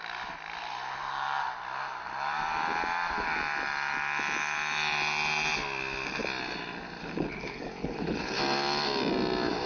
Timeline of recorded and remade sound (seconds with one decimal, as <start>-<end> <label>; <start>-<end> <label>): 0.0-7.0 recorded; 7.0-8.4 remade; 8.4-9.7 recorded